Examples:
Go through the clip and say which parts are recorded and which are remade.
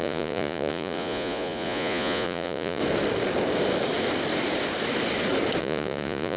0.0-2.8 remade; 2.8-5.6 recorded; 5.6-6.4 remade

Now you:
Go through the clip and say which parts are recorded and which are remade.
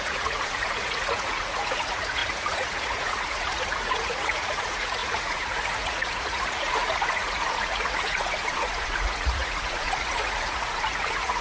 0.0-11.4 remade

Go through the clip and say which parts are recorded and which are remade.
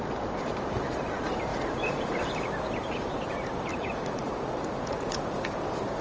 0.0-1.5 recorded; 1.5-2.2 remade; 2.2-3.7 recorded; 3.7-5.5 remade; 5.5-6.0 recorded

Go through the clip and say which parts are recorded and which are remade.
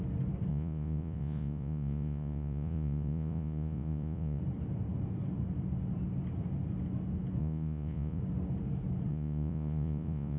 0.0-0.5 recorded; 0.5-4.4 remade; 4.4-7.4 recorded; 7.4-8.2 remade; 8.2-9.1 recorded; 9.1-10.4 remade